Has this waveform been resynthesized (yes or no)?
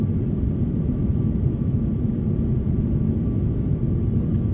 no